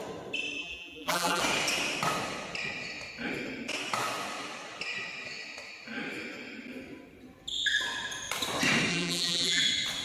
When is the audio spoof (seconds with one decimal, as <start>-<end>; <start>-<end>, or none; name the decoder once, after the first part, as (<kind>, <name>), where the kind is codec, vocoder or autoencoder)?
0.6-1.4 (vocoder, BigVGAN v2); 8.9-9.6